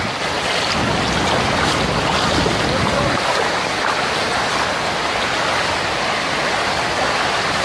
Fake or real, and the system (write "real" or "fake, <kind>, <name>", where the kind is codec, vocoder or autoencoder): real